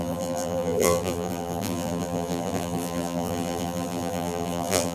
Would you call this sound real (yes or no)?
no